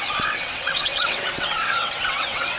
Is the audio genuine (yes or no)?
no